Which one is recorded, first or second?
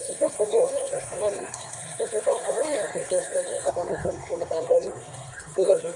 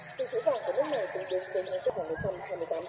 second